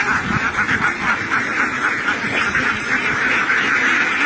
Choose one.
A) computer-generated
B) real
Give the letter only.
B